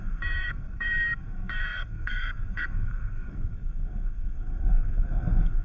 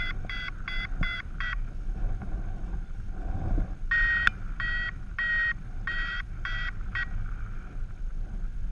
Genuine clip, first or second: second